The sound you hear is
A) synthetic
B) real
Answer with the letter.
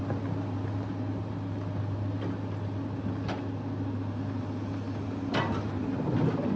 B